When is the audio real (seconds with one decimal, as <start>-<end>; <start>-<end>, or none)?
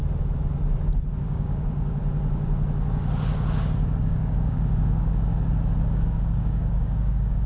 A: 0.0-1.2; 2.0-4.0; 5.3-5.8